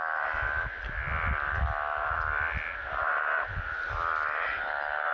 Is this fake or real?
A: real